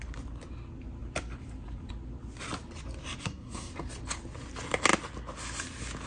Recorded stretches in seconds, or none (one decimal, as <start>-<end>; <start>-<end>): 0.0-3.2; 3.7-6.1